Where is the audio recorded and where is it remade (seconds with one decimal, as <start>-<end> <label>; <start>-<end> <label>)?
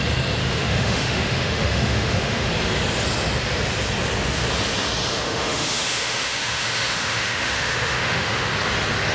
0.0-0.4 recorded; 0.4-2.5 remade; 2.5-5.1 recorded; 5.1-8.5 remade; 8.5-9.1 recorded